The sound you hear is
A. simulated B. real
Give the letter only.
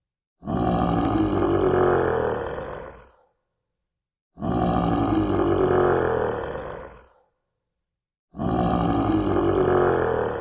B